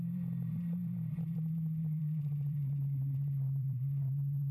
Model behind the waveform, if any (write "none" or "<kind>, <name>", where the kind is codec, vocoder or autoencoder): vocoder, BigVGAN v2